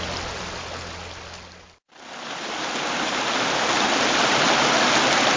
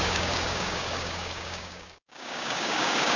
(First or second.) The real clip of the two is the first